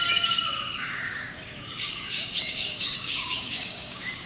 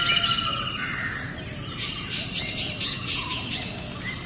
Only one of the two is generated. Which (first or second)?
first